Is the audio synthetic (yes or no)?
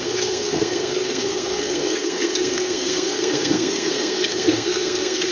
yes